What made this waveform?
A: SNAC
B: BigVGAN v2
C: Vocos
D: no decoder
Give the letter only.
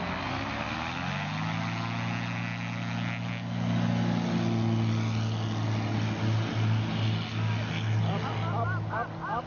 D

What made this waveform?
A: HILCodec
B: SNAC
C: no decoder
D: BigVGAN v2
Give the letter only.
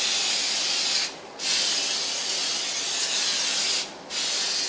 C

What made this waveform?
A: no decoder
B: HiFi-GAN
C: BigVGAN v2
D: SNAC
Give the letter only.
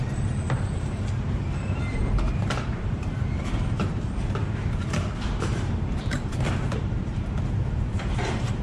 C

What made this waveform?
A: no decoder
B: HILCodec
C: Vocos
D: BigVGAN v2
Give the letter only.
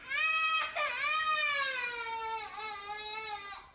A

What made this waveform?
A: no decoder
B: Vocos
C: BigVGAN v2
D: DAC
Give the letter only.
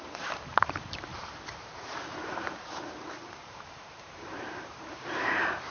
C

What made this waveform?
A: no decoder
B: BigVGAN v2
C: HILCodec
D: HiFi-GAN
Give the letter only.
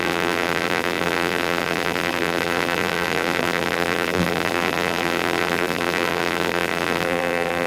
B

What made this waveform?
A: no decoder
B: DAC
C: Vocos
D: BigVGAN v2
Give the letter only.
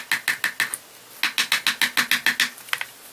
A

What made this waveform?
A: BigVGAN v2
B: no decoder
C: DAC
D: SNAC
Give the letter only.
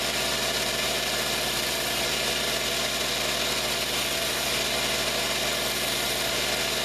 B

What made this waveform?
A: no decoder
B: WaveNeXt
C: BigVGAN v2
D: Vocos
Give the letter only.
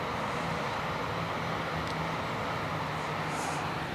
A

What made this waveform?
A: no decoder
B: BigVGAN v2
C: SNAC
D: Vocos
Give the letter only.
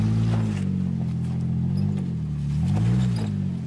A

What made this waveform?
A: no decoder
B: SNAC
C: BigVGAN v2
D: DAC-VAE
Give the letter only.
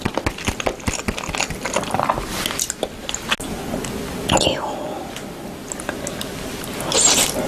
A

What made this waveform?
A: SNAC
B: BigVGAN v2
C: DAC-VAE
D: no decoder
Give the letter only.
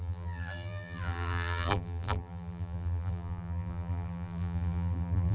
B